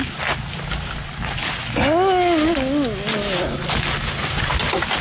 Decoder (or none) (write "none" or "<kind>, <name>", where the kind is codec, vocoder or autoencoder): none